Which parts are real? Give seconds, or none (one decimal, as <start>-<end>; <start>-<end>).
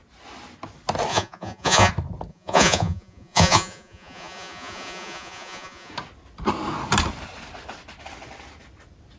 0.0-1.1; 1.9-2.3; 5.9-9.2